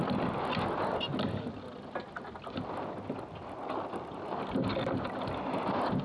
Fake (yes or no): no